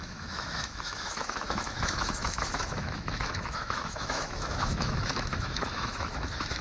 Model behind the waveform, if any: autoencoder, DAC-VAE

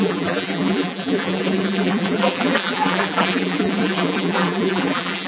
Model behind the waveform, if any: vocoder, BigVGAN v2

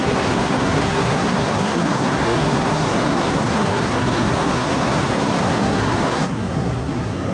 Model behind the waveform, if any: codec, SNAC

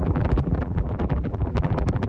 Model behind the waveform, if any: vocoder, BigVGAN v2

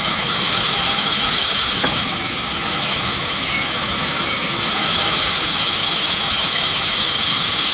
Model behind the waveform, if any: autoencoder, DAC-VAE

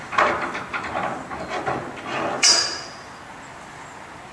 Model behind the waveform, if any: none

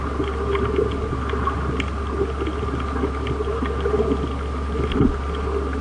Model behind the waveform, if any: none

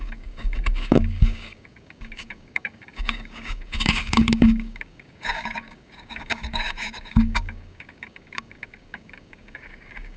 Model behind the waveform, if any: codec, DAC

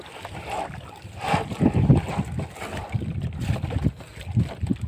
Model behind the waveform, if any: none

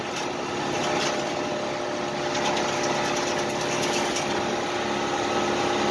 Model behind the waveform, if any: none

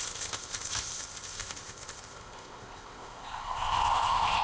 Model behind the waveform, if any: codec, ZipCodec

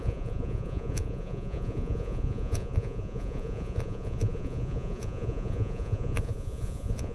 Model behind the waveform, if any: vocoder, Vocos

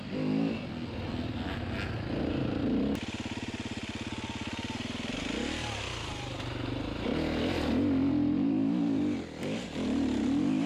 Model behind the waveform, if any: none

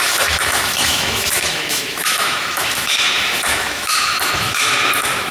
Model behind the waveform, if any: autoencoder, DAC-VAE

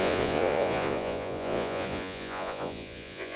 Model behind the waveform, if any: vocoder, Vocos